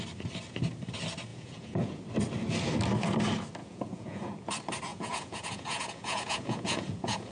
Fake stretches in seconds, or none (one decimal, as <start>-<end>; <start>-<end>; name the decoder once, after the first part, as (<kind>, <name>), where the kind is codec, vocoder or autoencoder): 1.3-2.0 (vocoder, Vocos); 3.6-4.5; 4.9-7.3